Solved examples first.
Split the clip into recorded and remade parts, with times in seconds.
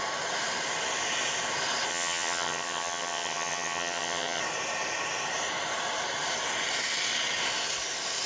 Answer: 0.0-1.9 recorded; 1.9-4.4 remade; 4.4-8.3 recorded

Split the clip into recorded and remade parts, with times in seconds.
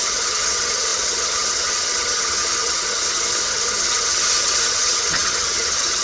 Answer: 0.0-6.0 remade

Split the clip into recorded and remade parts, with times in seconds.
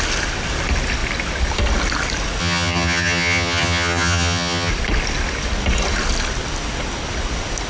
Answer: 0.0-2.4 recorded; 2.4-4.7 remade; 4.7-7.7 recorded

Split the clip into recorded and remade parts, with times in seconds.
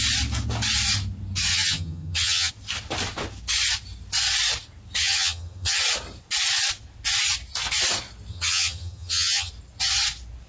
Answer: 0.0-1.5 recorded; 1.5-2.5 remade; 2.5-5.0 recorded; 5.0-5.8 remade; 5.8-8.3 recorded; 8.3-9.5 remade; 9.5-10.5 recorded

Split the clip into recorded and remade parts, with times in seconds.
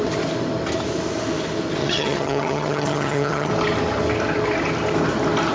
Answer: 0.0-1.8 recorded; 1.8-3.5 remade; 3.5-5.5 recorded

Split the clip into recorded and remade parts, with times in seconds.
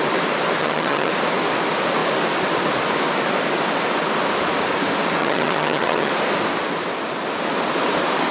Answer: 0.0-0.6 recorded; 0.6-1.1 remade; 1.1-5.2 recorded; 5.2-6.1 remade; 6.1-8.3 recorded